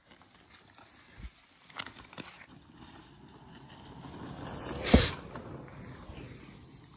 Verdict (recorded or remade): recorded